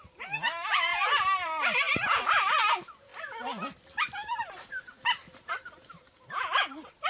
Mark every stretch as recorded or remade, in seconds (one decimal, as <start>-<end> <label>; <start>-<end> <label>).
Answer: 0.0-3.1 remade; 3.1-4.4 recorded; 4.4-7.1 remade